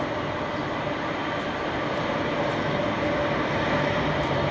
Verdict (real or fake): real